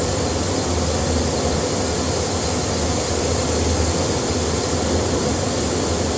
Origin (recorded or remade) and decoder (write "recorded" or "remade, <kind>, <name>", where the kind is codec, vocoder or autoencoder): recorded